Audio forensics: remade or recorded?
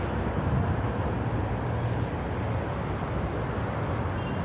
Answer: recorded